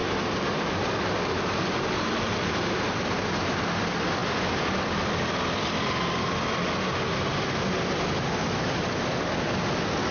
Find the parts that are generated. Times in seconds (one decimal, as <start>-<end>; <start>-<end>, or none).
0.0-3.6; 8.4-9.2